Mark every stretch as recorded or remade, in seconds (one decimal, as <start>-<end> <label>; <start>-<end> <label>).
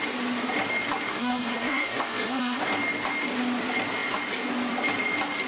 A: 0.0-1.1 recorded; 1.1-2.6 remade; 2.6-5.5 recorded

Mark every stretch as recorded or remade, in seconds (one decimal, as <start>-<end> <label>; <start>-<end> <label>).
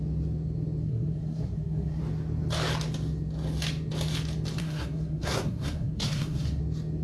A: 0.0-0.8 recorded; 0.8-2.0 remade; 2.0-4.6 recorded; 4.6-6.6 remade; 6.6-7.0 recorded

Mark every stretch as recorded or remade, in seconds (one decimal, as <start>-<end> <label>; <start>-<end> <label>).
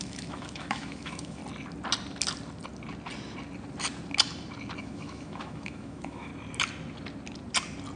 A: 0.0-1.4 remade; 1.4-4.8 recorded; 4.8-6.3 remade; 6.3-8.0 recorded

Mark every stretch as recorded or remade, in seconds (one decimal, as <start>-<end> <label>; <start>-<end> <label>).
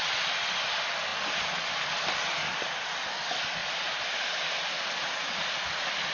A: 0.0-6.1 recorded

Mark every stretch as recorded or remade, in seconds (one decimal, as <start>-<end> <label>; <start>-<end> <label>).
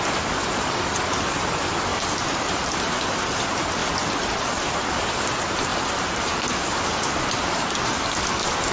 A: 0.0-1.9 recorded; 1.9-3.2 remade; 3.2-5.7 recorded; 5.7-7.1 remade; 7.1-8.7 recorded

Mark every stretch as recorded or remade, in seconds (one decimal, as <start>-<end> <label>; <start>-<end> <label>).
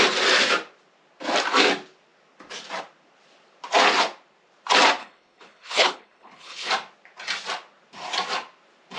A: 0.0-5.0 recorded; 5.0-6.7 remade; 6.7-9.0 recorded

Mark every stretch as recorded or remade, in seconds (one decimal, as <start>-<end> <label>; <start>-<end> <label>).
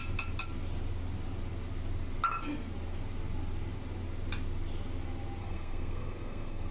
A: 0.0-5.4 recorded; 5.4-6.7 remade